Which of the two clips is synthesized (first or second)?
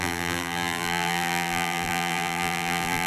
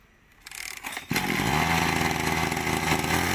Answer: first